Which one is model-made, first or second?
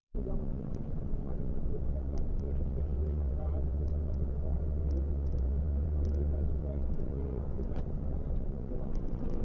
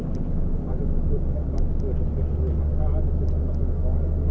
first